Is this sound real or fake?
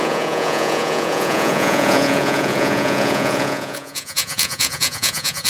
fake